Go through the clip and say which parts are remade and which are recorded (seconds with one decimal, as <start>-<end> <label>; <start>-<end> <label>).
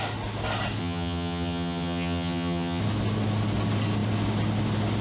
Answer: 0.0-0.8 recorded; 0.8-2.8 remade; 2.8-5.0 recorded